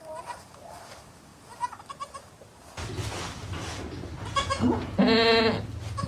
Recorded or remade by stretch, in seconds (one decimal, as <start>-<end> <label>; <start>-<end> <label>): 0.0-4.2 recorded; 4.2-5.0 remade; 5.0-6.1 recorded